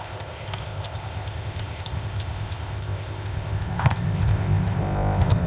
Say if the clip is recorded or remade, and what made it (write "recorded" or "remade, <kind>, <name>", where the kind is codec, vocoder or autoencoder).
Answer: remade, codec, ZipCodec